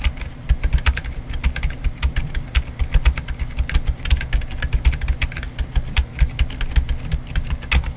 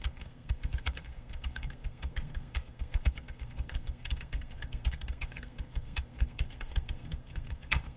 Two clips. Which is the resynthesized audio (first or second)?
second